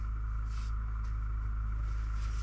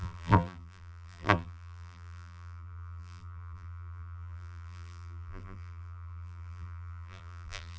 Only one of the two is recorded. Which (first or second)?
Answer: first